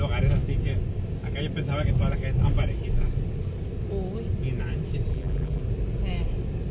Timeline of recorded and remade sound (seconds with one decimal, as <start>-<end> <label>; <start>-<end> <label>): 0.0-5.1 recorded; 5.1-5.6 remade; 5.6-6.7 recorded